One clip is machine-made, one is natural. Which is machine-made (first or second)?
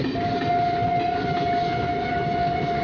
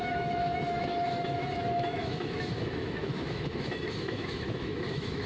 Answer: second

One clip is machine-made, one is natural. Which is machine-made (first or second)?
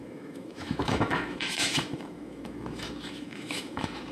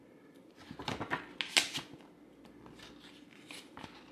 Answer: first